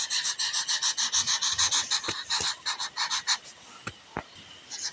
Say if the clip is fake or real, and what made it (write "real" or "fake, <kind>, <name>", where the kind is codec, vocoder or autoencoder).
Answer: real